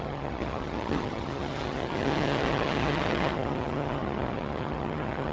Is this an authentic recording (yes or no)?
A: no